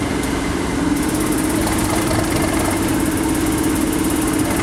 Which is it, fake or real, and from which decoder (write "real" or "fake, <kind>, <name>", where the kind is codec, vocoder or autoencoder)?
real